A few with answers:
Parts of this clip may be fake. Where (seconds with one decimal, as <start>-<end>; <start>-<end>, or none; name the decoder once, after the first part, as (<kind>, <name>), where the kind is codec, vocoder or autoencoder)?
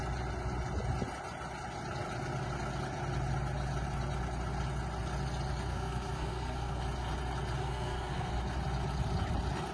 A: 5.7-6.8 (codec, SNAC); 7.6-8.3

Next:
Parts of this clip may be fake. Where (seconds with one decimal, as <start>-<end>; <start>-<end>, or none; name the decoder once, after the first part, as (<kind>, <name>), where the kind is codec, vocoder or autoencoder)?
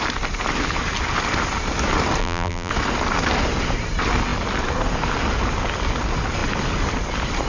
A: 2.2-2.7 (vocoder, BigVGAN v2)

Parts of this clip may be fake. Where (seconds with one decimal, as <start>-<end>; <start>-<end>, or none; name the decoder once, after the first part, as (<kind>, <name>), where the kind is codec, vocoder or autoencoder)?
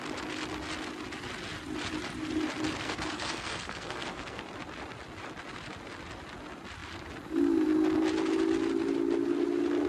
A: 2.8-4.4 (codec, SNAC)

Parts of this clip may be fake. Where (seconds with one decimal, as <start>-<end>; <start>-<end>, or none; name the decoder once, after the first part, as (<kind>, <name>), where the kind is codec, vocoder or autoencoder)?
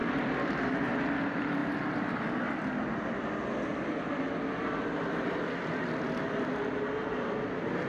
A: 0.0-1.0 (vocoder, BigVGAN v2); 1.6-2.9; 3.7-7.9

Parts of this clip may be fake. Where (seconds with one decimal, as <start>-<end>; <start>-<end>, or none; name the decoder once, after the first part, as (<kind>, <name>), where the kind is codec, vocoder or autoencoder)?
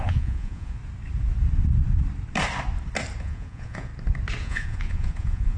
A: 0.0-0.8 (vocoder, Vocos); 3.2-3.9; 4.4-5.6